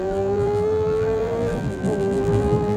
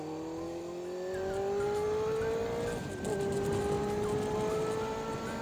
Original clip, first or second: second